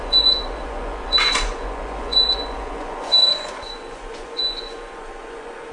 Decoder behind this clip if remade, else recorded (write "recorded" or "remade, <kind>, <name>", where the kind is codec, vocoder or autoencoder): remade, vocoder, Vocos